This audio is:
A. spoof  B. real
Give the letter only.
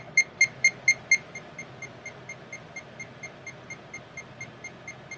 B